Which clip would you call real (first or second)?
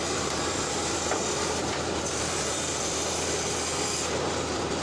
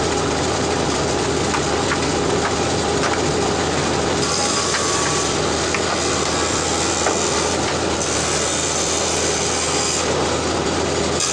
second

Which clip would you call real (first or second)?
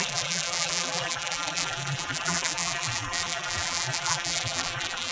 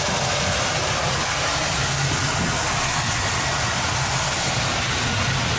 second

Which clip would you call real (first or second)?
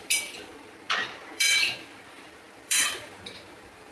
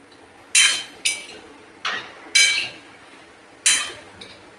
second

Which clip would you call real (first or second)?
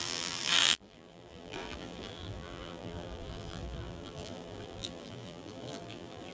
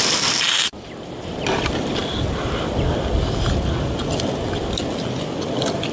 second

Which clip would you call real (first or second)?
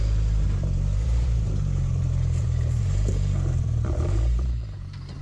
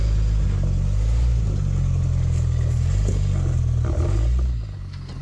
second